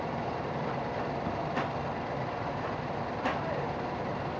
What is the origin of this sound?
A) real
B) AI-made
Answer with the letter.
B